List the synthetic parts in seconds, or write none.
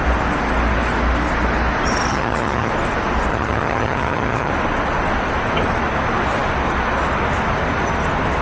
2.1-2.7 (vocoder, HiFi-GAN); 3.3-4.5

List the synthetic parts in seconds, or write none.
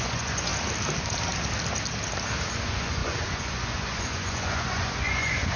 0.0-0.5 (vocoder, Vocos); 2.5-5.6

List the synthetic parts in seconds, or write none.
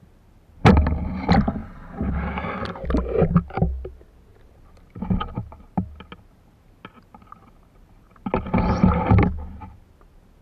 1.6-2.1 (vocoder, BigVGAN v2)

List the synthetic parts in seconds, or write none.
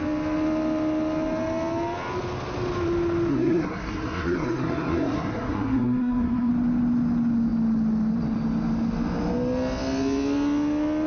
3.3-6.5 (codec, SNAC)